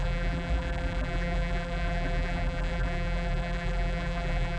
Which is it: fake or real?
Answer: fake